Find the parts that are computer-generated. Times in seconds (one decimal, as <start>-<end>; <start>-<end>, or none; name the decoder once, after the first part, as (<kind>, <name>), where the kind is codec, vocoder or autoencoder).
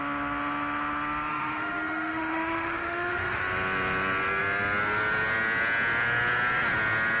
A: 1.3-3.4 (autoencoder, DAC-VAE)